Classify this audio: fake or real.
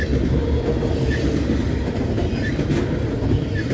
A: real